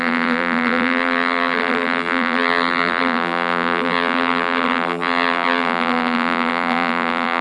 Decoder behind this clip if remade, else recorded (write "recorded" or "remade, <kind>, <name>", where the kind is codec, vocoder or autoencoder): remade, vocoder, BigVGAN v2